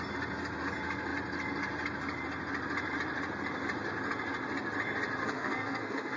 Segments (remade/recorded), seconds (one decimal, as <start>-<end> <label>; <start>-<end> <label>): 0.0-5.2 recorded; 5.2-6.2 remade

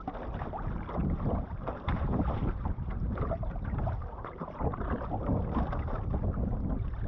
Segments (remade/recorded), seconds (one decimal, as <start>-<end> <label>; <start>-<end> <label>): 0.0-1.0 recorded; 1.0-5.3 remade; 5.3-7.1 recorded

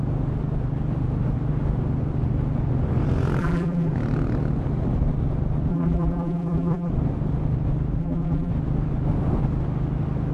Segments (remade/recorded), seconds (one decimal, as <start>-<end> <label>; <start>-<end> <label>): 0.0-3.4 recorded; 3.4-3.9 remade; 3.9-5.7 recorded; 5.7-6.9 remade; 6.9-8.0 recorded; 8.0-8.5 remade; 8.5-10.3 recorded

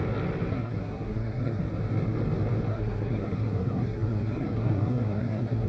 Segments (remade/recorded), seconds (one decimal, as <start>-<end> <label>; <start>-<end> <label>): 0.0-0.5 recorded; 0.5-1.6 remade; 1.6-2.7 recorded; 2.7-5.7 remade

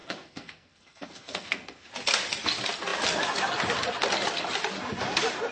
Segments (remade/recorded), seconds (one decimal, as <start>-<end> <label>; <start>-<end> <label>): 0.0-1.9 remade; 1.9-5.5 recorded

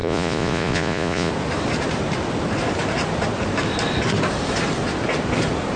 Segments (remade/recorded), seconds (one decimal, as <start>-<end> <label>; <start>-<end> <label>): 0.0-1.3 remade; 1.3-5.8 recorded

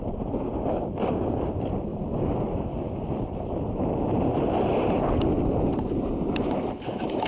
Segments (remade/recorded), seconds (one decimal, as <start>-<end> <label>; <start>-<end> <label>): 0.0-1.9 recorded; 1.9-5.0 remade; 5.0-7.3 recorded